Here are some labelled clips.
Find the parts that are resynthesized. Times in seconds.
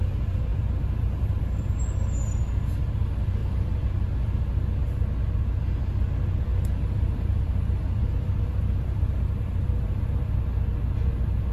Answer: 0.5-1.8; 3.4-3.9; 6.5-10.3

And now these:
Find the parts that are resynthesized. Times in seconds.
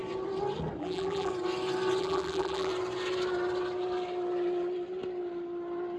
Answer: 0.8-1.3; 2.0-2.7